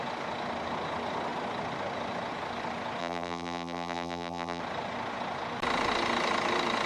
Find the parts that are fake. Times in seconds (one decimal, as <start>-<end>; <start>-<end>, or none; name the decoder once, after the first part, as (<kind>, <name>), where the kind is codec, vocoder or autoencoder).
3.0-4.6 (vocoder, BigVGAN v2)